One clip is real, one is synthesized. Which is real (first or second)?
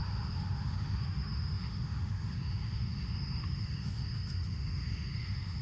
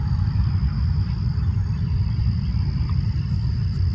second